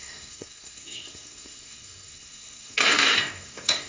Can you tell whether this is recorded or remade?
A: remade